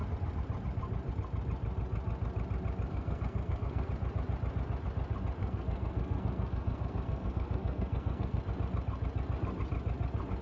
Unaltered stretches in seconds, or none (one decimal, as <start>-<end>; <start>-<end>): 0.0-2.9; 3.9-5.4; 8.4-10.4